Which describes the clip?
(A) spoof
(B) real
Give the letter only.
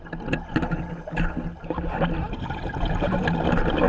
B